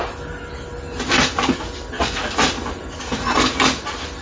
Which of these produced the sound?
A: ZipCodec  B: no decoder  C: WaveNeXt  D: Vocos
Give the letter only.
B